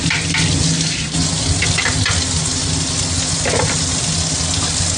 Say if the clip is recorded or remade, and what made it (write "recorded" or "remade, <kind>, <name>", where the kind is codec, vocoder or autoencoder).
recorded